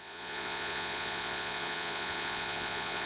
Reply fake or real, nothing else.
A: fake